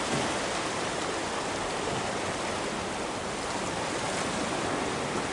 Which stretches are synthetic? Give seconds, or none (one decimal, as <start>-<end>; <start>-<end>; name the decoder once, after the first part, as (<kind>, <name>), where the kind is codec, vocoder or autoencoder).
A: none